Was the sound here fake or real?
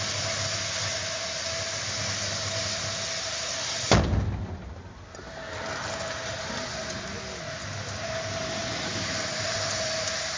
real